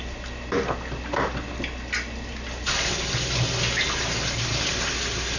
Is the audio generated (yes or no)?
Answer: no